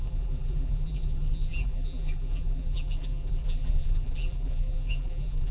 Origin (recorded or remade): remade